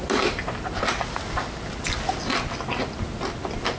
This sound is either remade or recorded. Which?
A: recorded